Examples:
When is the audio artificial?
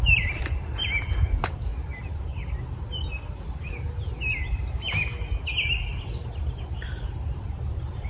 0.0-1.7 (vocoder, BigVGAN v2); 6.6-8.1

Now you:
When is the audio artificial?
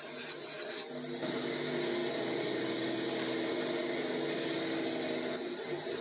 none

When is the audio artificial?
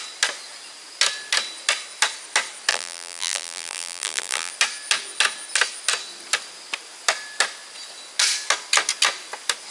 2.7-4.5 (vocoder, BigVGAN v2)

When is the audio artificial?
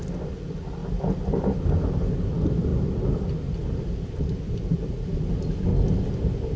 0.0-0.8 (vocoder, BigVGAN v2); 2.1-5.7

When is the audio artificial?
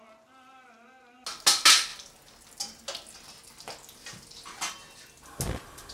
none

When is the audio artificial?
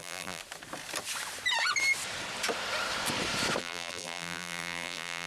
0.0-0.4 (vocoder, BigVGAN v2); 3.6-5.3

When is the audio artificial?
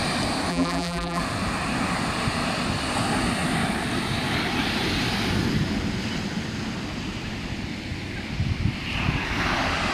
0.5-1.2 (vocoder, BigVGAN v2)